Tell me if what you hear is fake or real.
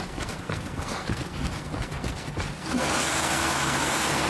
fake